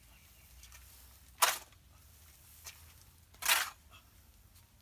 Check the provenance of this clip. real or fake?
real